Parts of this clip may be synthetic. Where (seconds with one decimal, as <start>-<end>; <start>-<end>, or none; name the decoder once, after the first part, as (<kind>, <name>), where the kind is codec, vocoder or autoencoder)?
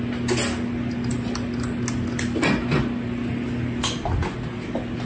none